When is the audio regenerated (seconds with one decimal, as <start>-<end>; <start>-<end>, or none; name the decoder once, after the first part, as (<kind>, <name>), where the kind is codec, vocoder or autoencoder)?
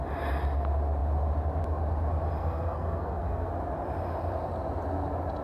2.4-3.5 (codec, SNAC)